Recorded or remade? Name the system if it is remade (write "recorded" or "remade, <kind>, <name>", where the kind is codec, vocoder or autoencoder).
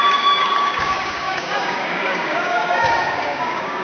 remade, codec, DAC